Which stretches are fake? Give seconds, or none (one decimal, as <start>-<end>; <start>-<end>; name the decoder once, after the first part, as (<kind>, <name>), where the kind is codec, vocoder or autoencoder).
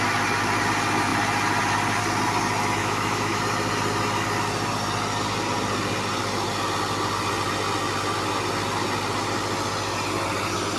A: 2.8-3.4 (autoencoder, DAC-VAE)